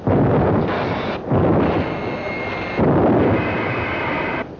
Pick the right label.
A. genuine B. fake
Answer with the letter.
A